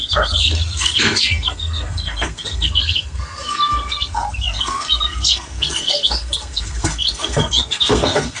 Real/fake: fake